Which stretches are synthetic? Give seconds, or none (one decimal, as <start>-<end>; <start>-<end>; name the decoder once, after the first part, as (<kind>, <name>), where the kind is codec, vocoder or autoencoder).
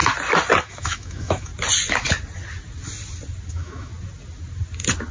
0.6-1.5 (autoencoder, DAC-VAE); 3.5-3.9